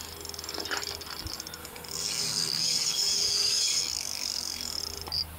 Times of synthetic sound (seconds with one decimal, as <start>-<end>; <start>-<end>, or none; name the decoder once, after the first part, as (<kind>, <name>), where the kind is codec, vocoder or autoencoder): 1.6-4.8 (codec, DAC)